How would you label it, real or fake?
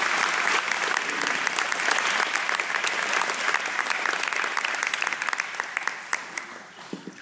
real